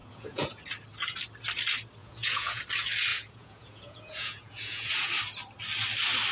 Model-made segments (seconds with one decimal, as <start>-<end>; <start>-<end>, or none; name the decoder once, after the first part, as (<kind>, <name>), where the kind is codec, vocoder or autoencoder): 0.0-0.6 (vocoder, Vocos); 2.0-2.6; 3.1-5.1

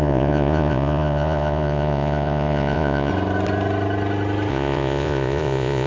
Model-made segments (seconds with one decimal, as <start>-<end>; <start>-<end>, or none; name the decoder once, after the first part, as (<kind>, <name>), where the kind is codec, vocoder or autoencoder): 0.0-3.1 (vocoder, Vocos); 4.5-5.9

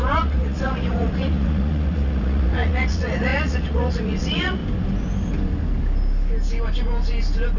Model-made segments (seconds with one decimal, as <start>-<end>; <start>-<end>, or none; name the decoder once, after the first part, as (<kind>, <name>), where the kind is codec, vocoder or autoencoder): 0.0-4.6 (vocoder, Vocos)

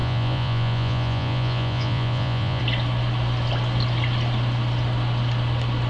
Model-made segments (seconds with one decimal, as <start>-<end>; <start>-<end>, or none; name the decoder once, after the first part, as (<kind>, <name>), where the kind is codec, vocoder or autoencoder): 0.0-2.6 (vocoder, Vocos)

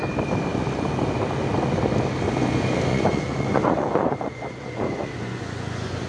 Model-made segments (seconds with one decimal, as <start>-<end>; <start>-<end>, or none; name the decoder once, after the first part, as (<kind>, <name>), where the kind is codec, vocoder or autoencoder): 2.9-6.1 (vocoder, Vocos)

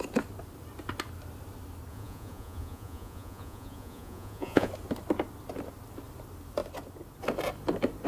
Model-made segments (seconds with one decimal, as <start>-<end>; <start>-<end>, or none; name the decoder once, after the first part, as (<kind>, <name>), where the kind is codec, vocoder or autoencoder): 1.9-4.7 (vocoder, Vocos)

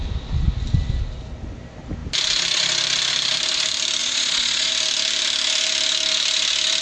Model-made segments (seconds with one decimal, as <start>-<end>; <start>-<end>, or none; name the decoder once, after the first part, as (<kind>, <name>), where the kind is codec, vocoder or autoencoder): 4.0-4.7 (vocoder, Vocos)

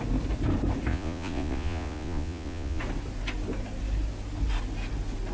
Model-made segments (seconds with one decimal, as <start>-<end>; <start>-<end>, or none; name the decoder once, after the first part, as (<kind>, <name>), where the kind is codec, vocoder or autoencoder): 0.9-2.8 (vocoder, Vocos)